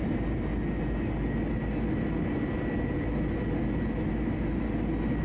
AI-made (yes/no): no